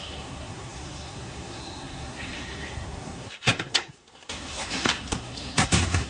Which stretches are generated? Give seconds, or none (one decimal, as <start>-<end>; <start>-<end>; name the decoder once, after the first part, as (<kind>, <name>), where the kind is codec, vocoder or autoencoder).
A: 0.0-6.1 (codec, SNAC)

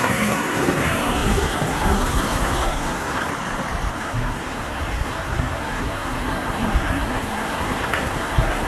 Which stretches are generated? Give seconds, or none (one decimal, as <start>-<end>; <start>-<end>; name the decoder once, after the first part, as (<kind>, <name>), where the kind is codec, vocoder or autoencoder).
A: 0.0-3.3 (codec, SNAC); 3.9-8.7